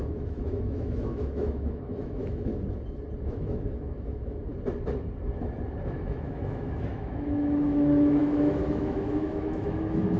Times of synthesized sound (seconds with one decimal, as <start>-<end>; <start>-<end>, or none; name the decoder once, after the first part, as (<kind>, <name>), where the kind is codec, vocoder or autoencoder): 0.0-2.5 (autoencoder, DAC-VAE); 3.2-4.5; 5.9-10.2